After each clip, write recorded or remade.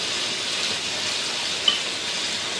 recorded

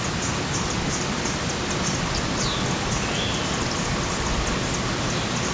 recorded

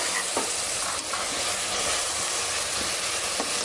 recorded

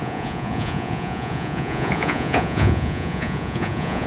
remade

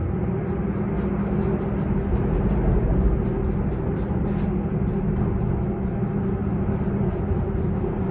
recorded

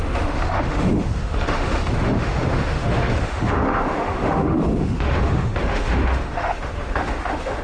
remade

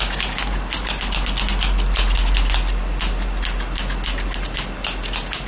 recorded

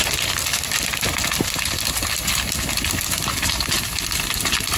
recorded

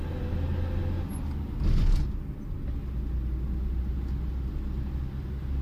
recorded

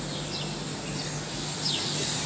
recorded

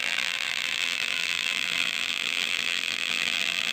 remade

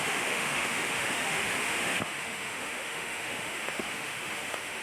remade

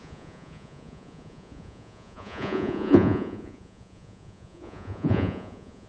remade